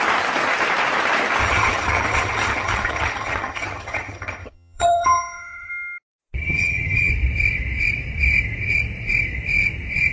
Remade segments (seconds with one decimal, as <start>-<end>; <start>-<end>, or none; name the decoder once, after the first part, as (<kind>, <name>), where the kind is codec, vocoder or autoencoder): 1.4-5.7 (vocoder, HiFi-GAN); 6.4-7.1